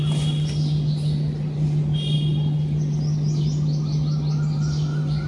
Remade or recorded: recorded